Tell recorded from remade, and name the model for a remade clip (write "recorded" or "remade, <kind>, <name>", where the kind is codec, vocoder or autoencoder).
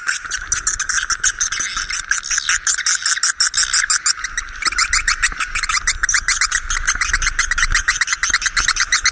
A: recorded